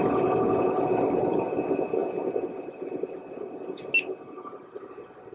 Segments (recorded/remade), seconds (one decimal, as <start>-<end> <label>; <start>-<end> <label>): 0.0-5.3 recorded